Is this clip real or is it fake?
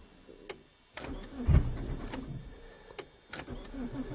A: real